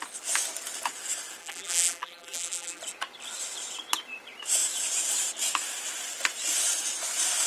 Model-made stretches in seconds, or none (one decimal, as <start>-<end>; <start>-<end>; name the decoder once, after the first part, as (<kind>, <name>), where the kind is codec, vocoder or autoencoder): 1.4-2.8 (vocoder, BigVGAN v2)